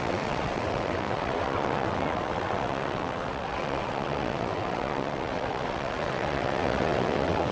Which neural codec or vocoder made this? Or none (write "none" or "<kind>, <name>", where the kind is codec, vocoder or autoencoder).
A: vocoder, WaveNeXt